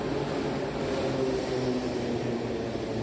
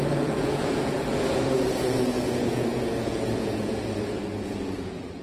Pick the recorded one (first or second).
first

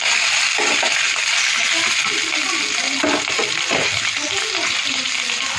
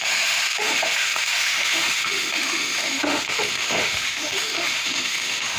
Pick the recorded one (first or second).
first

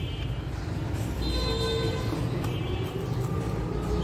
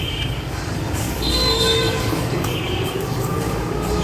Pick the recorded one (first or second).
first